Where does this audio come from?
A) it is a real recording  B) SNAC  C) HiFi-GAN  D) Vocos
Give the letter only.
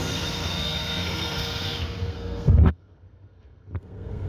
B